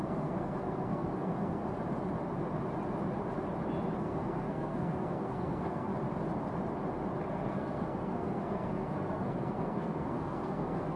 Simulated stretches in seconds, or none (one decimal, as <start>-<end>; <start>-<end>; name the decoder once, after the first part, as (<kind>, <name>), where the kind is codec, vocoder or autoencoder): 0.0-1.6 (codec, SNAC); 4.0-5.9; 7.2-11.0